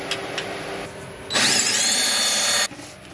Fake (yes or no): no